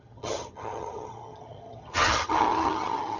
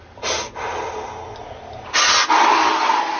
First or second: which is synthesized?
first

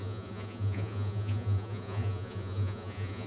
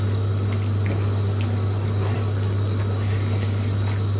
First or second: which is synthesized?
first